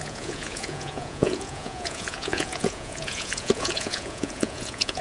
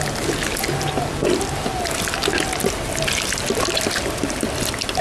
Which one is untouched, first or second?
second